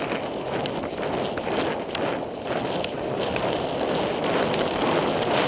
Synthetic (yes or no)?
no